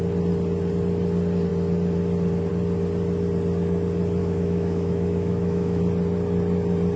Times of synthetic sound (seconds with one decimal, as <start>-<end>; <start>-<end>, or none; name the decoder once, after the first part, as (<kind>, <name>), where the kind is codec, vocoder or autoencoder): 4.2-5.8 (autoencoder, DAC-VAE)